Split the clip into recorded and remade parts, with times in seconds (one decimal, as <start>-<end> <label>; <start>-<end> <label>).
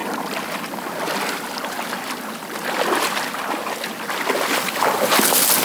0.0-5.6 recorded